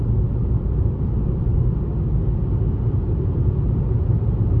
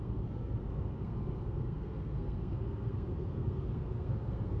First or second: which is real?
first